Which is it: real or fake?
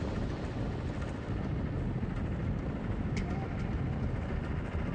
real